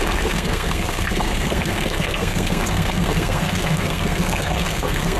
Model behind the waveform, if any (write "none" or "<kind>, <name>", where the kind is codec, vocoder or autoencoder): codec, SNAC